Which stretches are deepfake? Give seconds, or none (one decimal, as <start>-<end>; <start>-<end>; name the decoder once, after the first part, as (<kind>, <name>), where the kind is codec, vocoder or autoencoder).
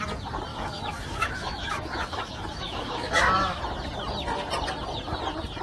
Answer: 0.5-3.6 (autoencoder, DAC-VAE)